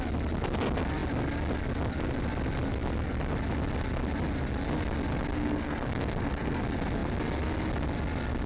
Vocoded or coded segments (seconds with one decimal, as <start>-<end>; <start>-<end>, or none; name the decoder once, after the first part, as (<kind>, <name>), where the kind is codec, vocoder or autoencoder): 5.3-6.6 (codec, SNAC)